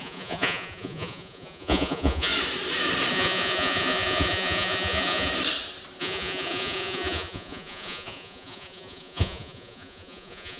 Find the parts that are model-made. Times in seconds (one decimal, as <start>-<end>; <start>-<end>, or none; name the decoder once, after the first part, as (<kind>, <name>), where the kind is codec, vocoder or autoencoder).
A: 0.0-2.3 (vocoder, Vocos); 3.1-5.3; 6.0-10.6